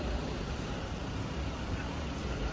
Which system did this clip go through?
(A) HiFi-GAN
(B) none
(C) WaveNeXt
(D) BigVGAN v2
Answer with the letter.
D